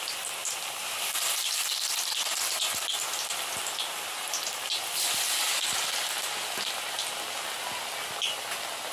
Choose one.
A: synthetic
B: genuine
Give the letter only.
B